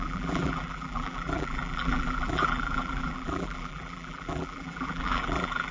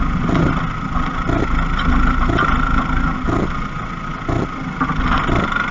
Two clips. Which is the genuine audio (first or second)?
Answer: second